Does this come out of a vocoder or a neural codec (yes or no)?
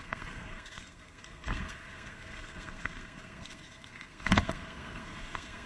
yes